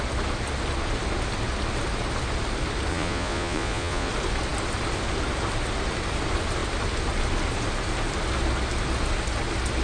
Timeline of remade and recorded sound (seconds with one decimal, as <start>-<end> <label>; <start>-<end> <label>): 0.0-2.9 recorded; 2.9-4.1 remade; 4.1-9.8 recorded